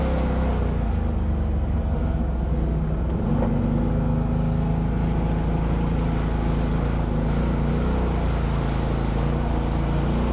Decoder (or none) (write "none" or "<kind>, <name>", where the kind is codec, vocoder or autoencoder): none